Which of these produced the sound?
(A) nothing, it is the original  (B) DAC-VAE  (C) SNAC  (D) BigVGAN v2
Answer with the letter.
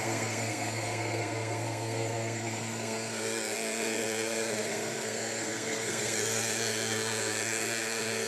C